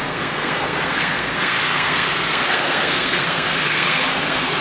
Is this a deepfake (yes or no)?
yes